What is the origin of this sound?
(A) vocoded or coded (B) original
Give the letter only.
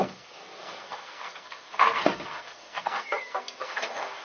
A